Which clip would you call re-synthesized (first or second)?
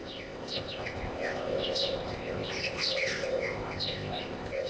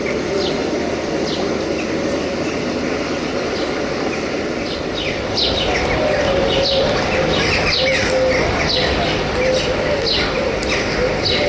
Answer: first